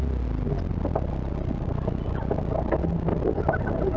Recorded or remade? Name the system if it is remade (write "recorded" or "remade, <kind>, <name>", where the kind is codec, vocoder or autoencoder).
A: recorded